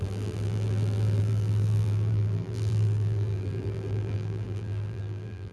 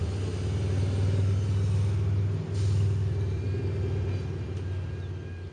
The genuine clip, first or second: second